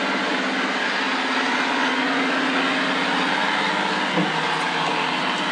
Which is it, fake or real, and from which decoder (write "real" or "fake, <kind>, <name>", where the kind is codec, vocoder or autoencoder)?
real